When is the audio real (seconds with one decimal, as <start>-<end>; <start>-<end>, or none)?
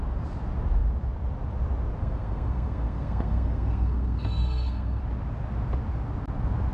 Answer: 0.0-2.0; 5.0-6.7